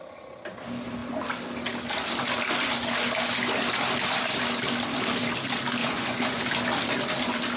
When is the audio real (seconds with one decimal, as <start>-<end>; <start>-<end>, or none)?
0.0-5.8; 6.4-7.6